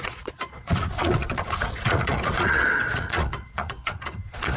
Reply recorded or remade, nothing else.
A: remade